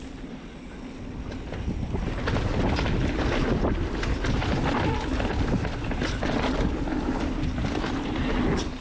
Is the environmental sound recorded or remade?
recorded